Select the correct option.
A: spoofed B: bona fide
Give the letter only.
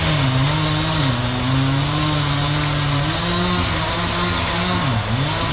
B